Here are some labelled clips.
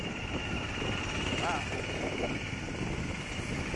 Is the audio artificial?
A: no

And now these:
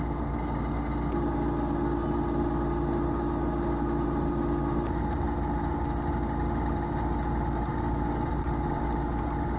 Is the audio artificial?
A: no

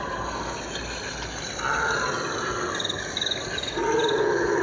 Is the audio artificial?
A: no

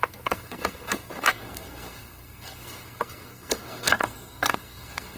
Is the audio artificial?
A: yes